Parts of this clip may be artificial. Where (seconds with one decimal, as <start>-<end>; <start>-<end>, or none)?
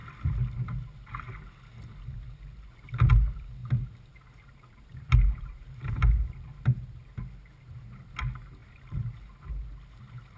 3.6-7.2